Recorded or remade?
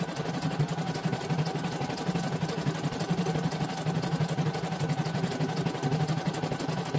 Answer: recorded